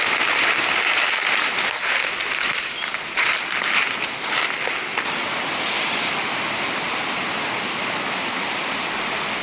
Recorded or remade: recorded